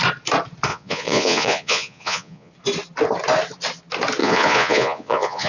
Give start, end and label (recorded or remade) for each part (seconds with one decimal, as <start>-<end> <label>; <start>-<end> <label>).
0.0-0.7 recorded; 0.7-2.5 remade; 2.5-4.2 recorded; 4.2-5.5 remade